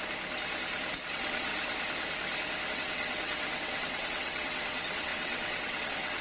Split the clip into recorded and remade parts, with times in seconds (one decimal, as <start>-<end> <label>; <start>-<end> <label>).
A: 0.0-1.1 recorded; 1.1-1.5 remade; 1.5-2.7 recorded; 2.7-6.2 remade